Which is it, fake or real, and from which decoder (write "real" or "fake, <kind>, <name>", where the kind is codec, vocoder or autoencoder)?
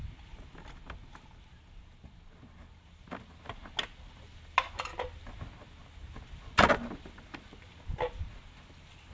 real